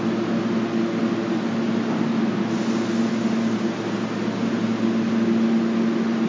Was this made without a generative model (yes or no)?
yes